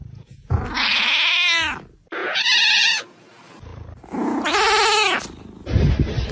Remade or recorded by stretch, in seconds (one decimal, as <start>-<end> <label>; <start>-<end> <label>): 0.0-0.6 remade; 0.6-2.2 recorded; 2.2-3.0 remade; 3.0-6.3 recorded